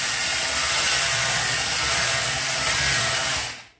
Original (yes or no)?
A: yes